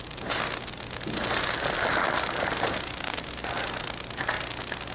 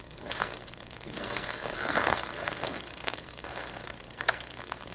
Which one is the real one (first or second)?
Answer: first